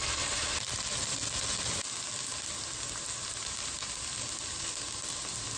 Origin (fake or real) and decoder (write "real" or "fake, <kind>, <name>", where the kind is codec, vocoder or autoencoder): real